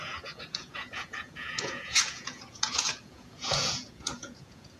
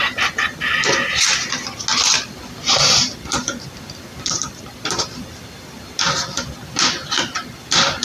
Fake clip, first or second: first